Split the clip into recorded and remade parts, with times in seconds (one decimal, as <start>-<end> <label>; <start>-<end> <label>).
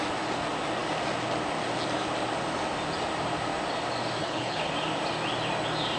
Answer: 0.0-4.2 recorded; 4.2-4.7 remade; 4.7-6.0 recorded